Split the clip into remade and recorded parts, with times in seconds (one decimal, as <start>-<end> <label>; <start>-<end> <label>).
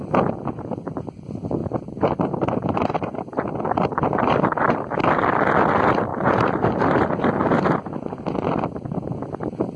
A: 0.0-1.6 recorded; 1.6-4.2 remade; 4.2-6.1 recorded; 6.1-7.2 remade; 7.2-9.8 recorded